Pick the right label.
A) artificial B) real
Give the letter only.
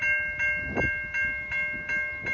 B